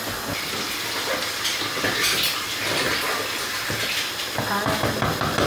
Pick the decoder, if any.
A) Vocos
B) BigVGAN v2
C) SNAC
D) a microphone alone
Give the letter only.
D